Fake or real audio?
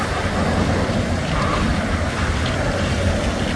real